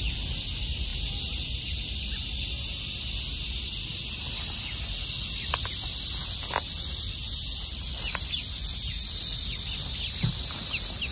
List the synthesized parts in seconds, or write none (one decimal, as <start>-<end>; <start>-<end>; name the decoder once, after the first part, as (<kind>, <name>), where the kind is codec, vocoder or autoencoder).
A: none